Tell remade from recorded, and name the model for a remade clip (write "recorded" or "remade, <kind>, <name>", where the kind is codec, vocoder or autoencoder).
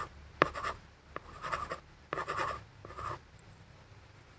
remade, vocoder, BigVGAN v2